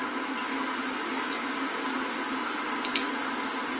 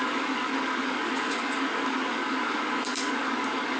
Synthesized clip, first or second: second